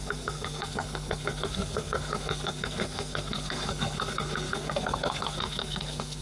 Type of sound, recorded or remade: remade